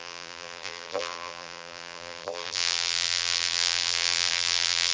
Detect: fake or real fake